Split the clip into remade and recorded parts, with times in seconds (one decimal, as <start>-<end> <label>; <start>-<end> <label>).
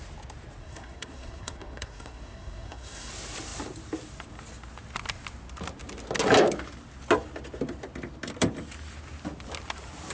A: 0.0-0.6 recorded; 0.6-3.1 remade; 3.1-10.1 recorded